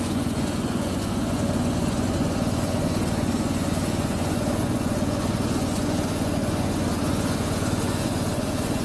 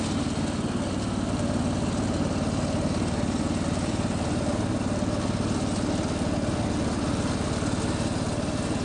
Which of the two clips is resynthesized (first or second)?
first